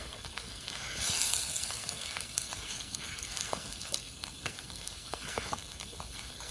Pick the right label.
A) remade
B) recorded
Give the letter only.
A